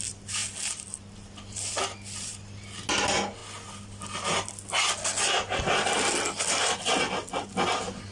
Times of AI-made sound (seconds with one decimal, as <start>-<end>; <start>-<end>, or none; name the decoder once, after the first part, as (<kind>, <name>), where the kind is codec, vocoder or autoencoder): none